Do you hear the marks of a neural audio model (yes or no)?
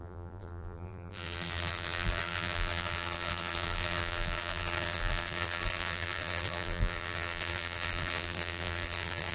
yes